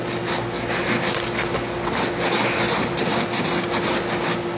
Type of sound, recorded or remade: recorded